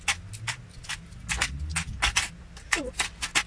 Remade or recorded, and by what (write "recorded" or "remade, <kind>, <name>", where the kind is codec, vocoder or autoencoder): recorded